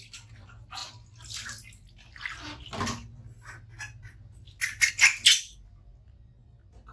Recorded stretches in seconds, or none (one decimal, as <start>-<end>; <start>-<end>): 0.0-6.9